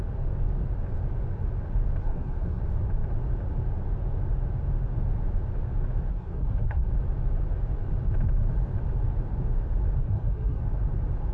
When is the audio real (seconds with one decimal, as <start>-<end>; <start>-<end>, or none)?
0.0-2.0; 2.6-6.1; 6.9-10.0; 10.6-11.3